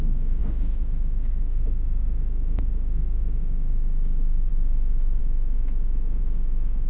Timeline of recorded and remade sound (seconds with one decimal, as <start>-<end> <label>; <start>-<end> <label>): 0.0-6.9 remade